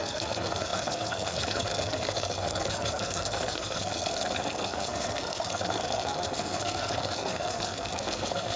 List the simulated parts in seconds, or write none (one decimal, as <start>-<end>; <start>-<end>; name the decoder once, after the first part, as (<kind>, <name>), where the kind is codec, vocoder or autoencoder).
0.0-8.6 (codec, SNAC)